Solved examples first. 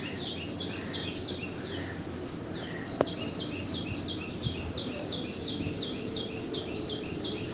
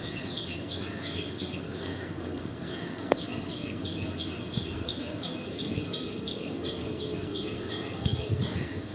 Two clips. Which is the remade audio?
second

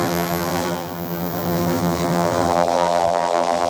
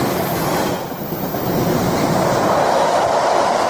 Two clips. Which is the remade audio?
first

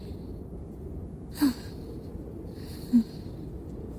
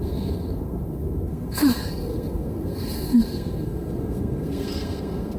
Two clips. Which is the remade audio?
second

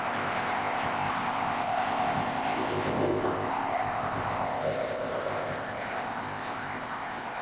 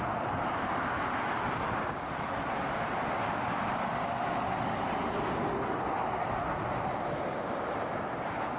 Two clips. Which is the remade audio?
first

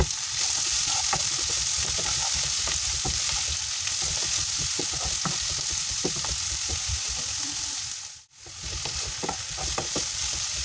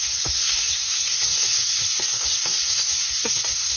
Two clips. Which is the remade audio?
second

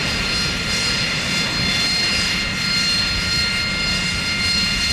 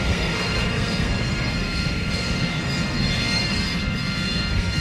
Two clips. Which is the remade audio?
second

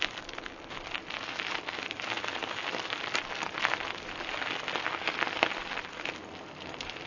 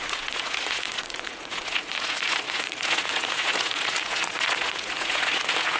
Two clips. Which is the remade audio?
second